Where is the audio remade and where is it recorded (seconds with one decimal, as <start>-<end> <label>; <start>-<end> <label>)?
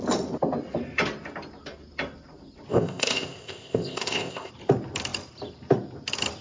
0.0-2.7 recorded; 2.7-4.5 remade; 4.5-6.4 recorded